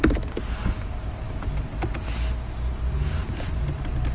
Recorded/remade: recorded